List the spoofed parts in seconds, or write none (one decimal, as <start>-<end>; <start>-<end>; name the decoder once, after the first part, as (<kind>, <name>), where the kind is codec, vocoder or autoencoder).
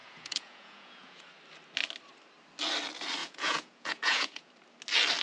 0.0-1.3 (vocoder, Vocos); 3.2-4.5